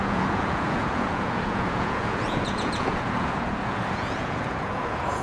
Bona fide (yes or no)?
no